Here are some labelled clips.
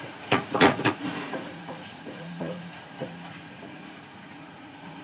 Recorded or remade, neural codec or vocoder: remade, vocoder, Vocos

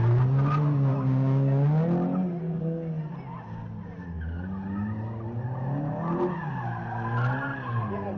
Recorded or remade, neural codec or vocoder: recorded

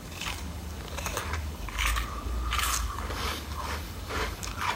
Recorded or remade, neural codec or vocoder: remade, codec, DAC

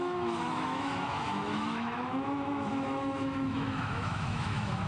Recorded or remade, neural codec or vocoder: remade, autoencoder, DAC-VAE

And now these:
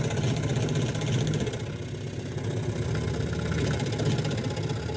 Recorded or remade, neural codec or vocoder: recorded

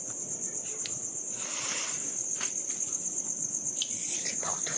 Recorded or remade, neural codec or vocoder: recorded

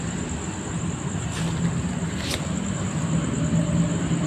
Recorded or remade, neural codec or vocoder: recorded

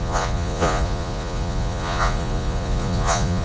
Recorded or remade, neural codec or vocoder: remade, vocoder, Vocos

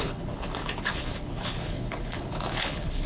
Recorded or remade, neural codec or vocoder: remade, codec, HILCodec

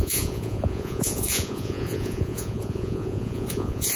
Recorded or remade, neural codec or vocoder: remade, vocoder, Vocos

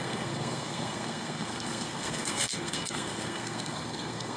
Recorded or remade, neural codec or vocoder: remade, codec, SNAC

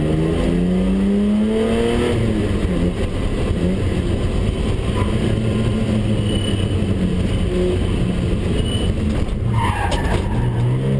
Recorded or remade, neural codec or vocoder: recorded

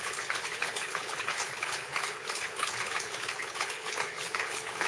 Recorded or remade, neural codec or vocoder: remade, codec, HILCodec